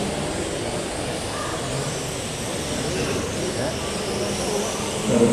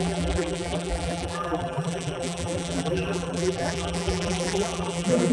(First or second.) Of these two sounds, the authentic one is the first